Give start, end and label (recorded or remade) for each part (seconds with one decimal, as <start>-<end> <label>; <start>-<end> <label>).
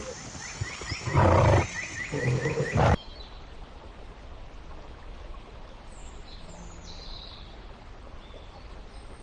0.0-6.0 recorded; 6.0-6.5 remade; 6.5-9.2 recorded